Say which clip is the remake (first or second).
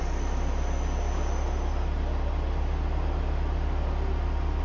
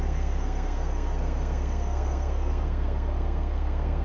second